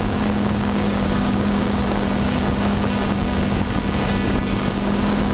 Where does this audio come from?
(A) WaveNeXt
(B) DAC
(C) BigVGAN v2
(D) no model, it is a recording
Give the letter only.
B